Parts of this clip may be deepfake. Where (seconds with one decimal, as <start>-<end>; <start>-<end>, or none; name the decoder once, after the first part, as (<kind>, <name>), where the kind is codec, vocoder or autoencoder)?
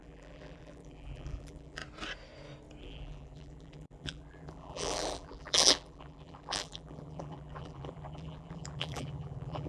0.0-1.8 (vocoder, BigVGAN v2); 2.8-9.7